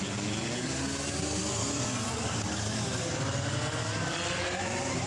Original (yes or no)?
yes